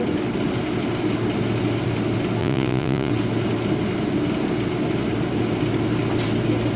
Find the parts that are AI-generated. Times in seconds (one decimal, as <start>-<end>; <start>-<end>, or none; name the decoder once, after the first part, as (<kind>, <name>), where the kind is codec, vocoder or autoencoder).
2.4-3.1 (vocoder, Vocos)

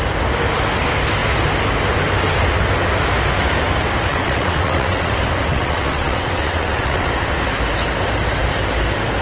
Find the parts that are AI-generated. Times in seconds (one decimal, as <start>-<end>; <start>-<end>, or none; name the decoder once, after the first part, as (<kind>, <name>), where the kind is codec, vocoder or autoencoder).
4.1-5.1 (vocoder, WaveNeXt); 5.5-7.1

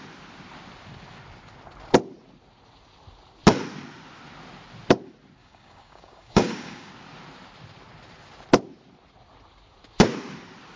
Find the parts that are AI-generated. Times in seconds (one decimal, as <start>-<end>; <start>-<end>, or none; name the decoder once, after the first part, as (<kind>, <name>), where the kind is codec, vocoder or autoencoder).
5.4-6.9 (codec, DAC)

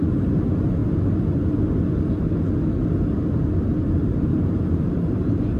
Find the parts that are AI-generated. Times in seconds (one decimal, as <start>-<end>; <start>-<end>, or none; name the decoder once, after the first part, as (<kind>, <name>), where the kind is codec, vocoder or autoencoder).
0.0-0.8 (vocoder, BigVGAN v2); 4.2-5.6